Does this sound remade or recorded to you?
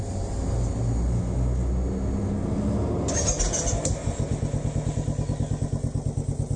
recorded